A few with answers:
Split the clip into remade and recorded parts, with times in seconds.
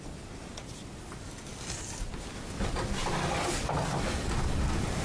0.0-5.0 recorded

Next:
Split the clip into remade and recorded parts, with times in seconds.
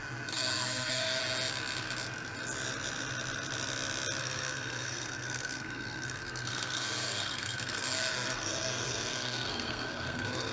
0.0-1.2 remade; 1.2-4.2 recorded; 4.2-10.5 remade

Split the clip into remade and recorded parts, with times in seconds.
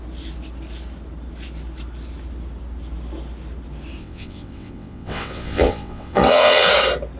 0.0-4.0 recorded; 4.0-6.7 remade; 6.7-7.2 recorded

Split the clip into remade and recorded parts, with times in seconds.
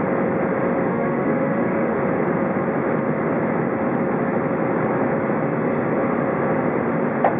0.0-0.9 recorded; 0.9-2.0 remade; 2.0-7.4 recorded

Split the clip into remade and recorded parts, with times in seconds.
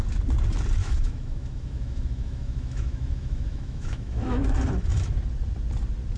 0.0-0.8 recorded; 0.8-4.5 remade; 4.5-6.2 recorded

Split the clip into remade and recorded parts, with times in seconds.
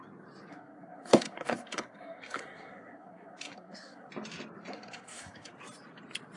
0.0-0.5 recorded; 0.5-4.1 remade; 4.1-4.7 recorded; 4.7-5.5 remade; 5.5-6.4 recorded